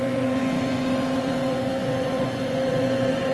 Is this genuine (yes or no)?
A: no